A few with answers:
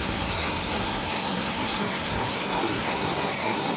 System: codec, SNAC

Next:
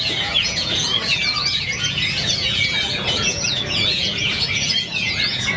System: vocoder, Vocos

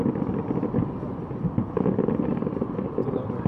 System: vocoder, BigVGAN v2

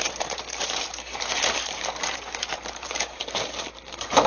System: vocoder, BigVGAN v2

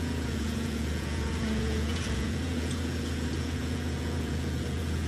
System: vocoder, Vocos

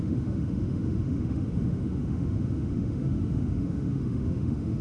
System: autoencoder, DAC-VAE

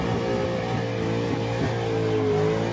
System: none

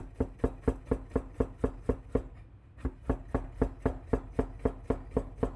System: none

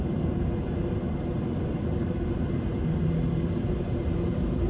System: vocoder, BigVGAN v2